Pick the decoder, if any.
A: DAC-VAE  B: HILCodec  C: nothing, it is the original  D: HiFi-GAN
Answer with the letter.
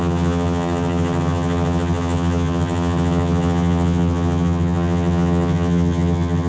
D